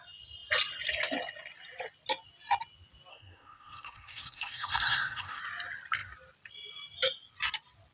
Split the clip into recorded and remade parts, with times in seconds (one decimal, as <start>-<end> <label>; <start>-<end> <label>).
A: 0.0-3.1 recorded; 3.1-5.4 remade; 5.4-7.9 recorded